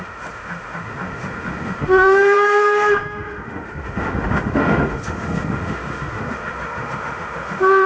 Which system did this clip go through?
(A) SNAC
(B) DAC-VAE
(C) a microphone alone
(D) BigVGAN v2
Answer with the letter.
B